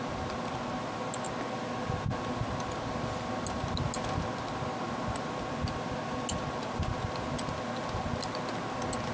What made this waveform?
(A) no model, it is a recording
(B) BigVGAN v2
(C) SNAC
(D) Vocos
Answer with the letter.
A